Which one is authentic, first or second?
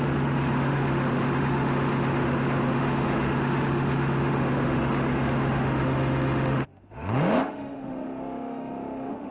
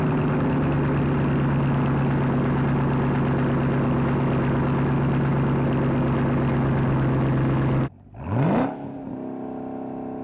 second